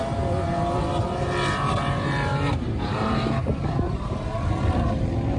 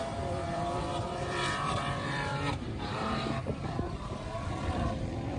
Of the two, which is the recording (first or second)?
first